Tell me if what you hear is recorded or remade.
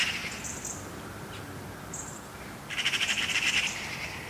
recorded